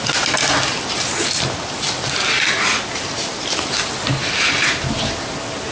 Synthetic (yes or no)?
no